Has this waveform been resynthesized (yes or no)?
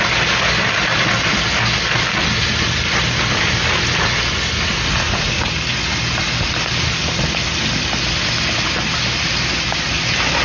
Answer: no